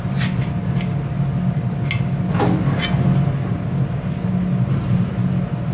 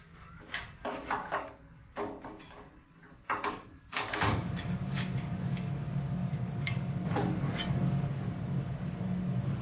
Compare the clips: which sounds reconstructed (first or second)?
second